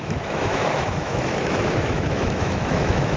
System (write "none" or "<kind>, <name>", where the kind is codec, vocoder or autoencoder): autoencoder, DAC-VAE